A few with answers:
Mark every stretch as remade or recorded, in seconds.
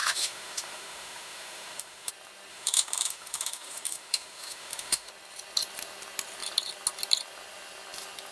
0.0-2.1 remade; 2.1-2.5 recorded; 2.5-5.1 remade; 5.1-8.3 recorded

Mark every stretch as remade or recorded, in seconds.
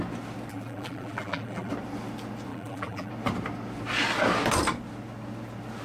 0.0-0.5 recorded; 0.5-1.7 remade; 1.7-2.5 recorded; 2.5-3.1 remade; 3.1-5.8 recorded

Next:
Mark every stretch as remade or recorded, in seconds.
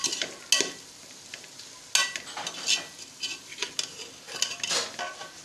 0.0-5.4 recorded